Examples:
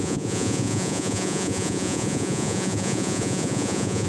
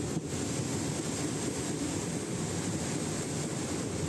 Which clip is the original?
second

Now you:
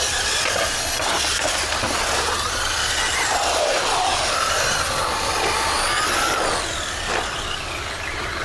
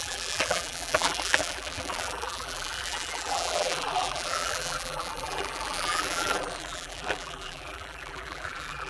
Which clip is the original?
first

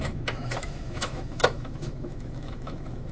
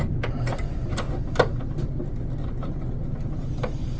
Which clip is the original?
second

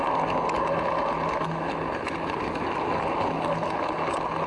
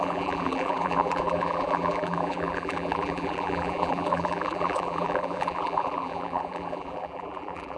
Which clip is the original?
first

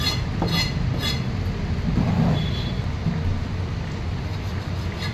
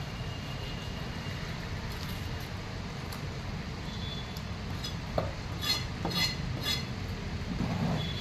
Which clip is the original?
first